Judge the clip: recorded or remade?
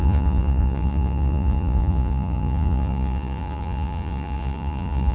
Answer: remade